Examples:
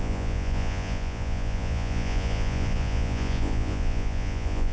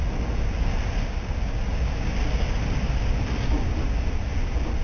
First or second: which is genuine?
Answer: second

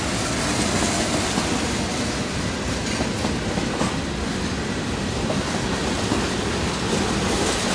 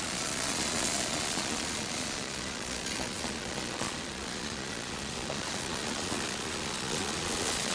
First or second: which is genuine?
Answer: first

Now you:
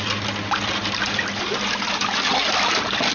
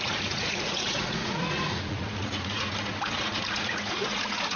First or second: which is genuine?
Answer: first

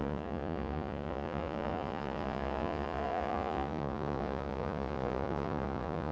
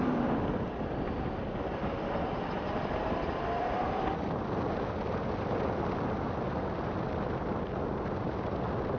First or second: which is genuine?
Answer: second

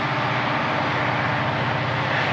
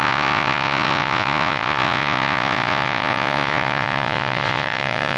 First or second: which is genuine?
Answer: first